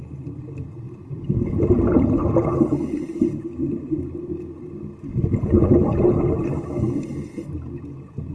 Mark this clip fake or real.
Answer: real